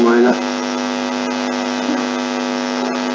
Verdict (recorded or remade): recorded